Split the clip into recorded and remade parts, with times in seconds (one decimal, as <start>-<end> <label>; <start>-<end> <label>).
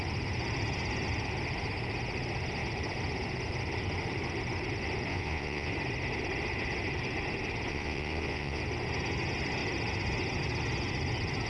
0.0-5.1 recorded; 5.1-5.7 remade; 5.7-7.7 recorded; 7.7-8.6 remade; 8.6-11.5 recorded